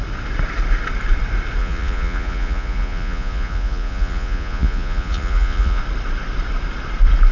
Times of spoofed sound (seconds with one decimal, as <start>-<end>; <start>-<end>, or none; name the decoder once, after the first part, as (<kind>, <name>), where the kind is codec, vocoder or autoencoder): 1.6-5.8 (vocoder, Vocos)